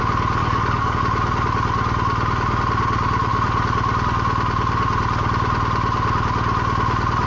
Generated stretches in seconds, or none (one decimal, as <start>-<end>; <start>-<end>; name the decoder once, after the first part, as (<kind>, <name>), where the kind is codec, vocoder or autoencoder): 0.4-1.0 (codec, DAC)